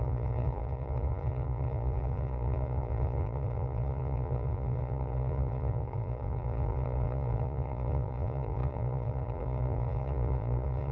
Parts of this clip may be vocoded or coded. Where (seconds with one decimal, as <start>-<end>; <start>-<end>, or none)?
0.0-10.9